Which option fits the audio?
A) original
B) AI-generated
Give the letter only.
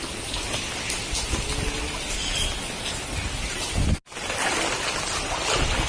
A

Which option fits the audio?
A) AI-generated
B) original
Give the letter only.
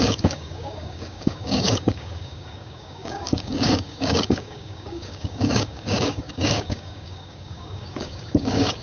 A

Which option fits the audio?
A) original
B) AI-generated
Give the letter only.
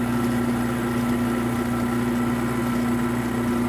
A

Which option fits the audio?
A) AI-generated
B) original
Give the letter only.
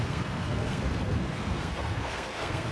A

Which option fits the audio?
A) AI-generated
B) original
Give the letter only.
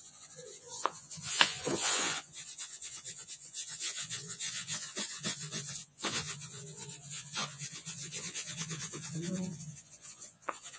A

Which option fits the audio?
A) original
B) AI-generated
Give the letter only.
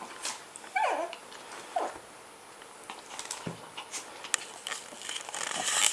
A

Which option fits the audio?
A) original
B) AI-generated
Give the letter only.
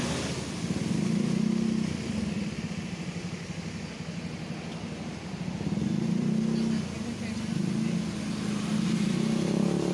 A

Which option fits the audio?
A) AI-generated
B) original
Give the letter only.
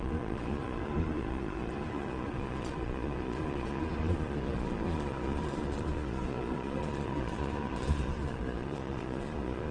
A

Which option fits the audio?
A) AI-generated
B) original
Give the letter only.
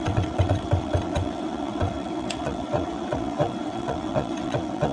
A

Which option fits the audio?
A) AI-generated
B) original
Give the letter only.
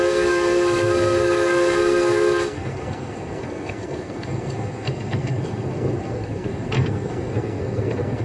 A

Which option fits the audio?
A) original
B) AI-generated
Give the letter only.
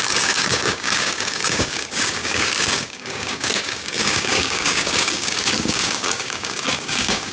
B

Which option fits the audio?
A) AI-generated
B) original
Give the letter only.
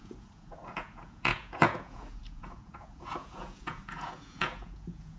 A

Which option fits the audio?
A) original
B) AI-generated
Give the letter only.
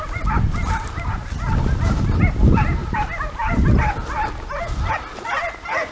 A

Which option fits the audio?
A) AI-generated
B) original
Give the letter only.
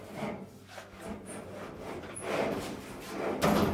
B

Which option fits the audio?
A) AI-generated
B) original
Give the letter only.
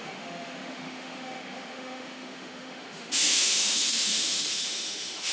A